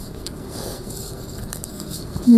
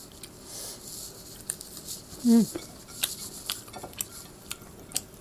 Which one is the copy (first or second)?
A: first